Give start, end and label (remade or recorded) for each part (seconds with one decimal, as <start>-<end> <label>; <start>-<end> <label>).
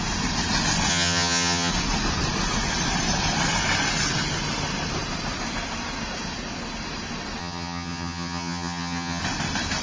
0.0-0.9 recorded; 0.9-1.7 remade; 1.7-7.4 recorded; 7.4-9.2 remade; 9.2-9.8 recorded